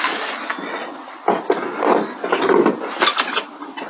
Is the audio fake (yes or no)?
no